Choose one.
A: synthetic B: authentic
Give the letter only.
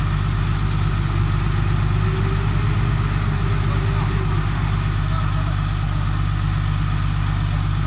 B